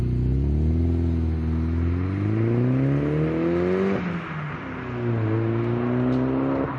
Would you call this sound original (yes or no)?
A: yes